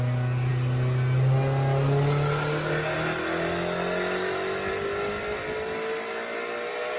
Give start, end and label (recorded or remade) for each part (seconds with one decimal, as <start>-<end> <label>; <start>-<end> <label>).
0.0-7.0 recorded